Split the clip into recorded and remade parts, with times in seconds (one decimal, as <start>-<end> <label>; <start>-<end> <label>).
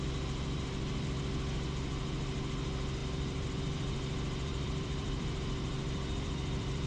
0.0-3.0 recorded; 3.0-6.9 remade